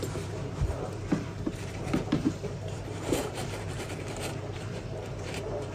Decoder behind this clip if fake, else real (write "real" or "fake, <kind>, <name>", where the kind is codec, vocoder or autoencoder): fake, vocoder, BigVGAN v2